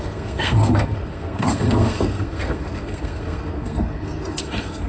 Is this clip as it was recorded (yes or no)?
no